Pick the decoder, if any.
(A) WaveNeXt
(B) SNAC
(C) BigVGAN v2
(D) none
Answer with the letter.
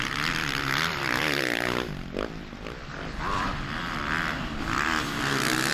C